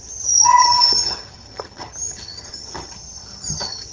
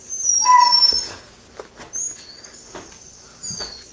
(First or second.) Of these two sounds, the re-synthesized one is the first